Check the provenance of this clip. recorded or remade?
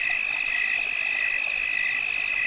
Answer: recorded